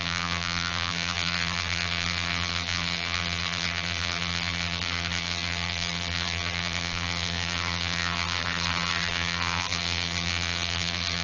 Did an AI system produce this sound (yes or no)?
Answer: yes